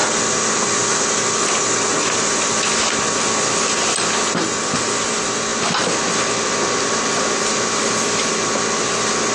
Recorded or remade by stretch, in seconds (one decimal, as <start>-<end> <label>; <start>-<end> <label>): 0.0-9.3 recorded